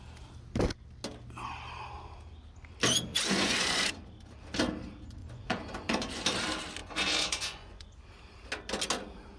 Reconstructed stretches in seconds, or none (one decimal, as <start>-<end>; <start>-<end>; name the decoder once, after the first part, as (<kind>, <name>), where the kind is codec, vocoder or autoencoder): 3.1-4.0 (vocoder, Vocos); 5.2-6.2; 6.8-8.1